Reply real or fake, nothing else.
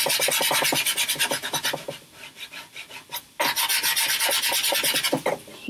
real